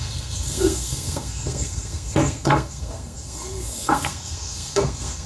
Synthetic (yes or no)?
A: yes